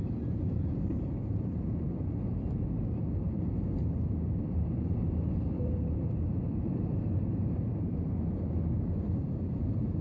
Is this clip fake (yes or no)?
yes